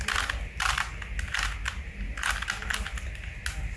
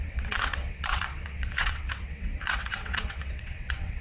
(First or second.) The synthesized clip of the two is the second